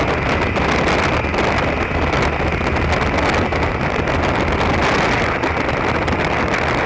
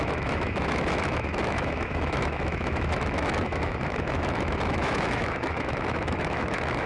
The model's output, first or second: second